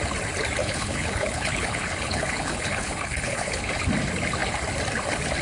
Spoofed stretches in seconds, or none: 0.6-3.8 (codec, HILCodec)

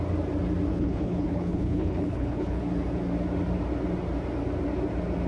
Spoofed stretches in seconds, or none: 0.7-2.6 (codec, HILCodec)

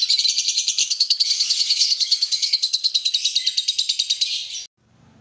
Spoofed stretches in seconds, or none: 0.8-3.1 (codec, HILCodec)